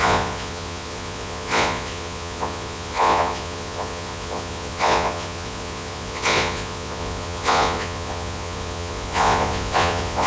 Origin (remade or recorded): remade